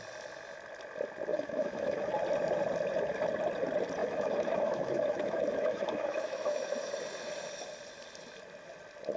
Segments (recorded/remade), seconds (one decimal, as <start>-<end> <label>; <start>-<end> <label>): 0.0-1.3 recorded; 1.3-2.1 remade; 2.1-4.0 recorded; 4.0-6.9 remade; 6.9-9.2 recorded